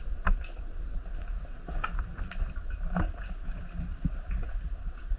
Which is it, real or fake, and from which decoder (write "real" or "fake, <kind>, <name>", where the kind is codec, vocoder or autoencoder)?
real